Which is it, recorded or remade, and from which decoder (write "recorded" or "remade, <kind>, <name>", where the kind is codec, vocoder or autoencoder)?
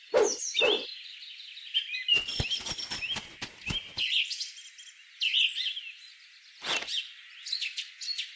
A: recorded